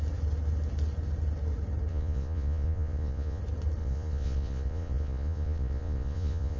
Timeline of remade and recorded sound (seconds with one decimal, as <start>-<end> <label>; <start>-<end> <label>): 0.0-1.9 recorded; 1.9-3.4 remade; 3.4-3.8 recorded; 3.8-6.6 remade